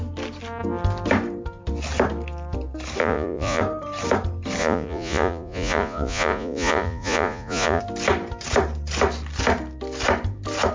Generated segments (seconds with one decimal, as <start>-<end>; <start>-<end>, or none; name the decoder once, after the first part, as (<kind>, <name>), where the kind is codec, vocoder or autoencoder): 3.0-3.6 (vocoder, Vocos); 4.6-7.8